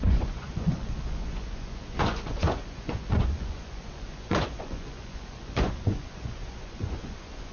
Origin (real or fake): fake